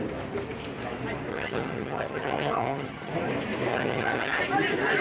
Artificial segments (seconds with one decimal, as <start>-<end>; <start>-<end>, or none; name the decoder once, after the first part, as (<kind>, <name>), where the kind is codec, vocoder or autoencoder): 1.3-3.1 (vocoder, HiFi-GAN); 3.7-4.4